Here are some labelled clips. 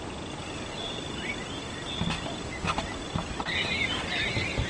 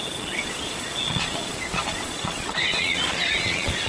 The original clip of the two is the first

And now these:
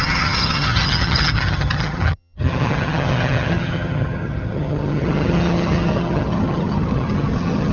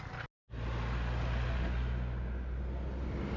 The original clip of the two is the second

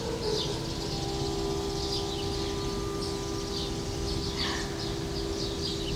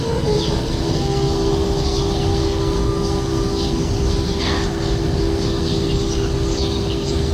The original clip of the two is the first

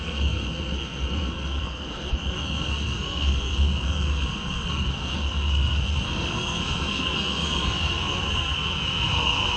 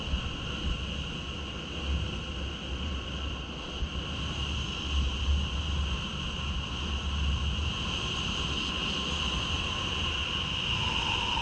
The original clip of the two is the second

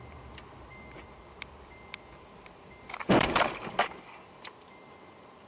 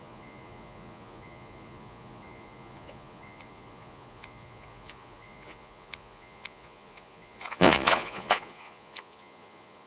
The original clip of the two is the first